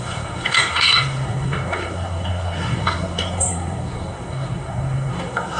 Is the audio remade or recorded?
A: remade